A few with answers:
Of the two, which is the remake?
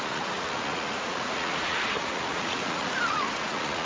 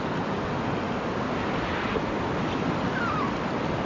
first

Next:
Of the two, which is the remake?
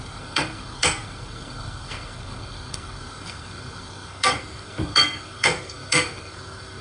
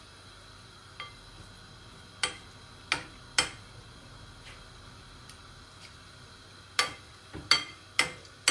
first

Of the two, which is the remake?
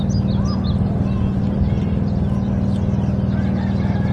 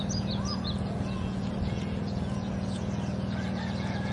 second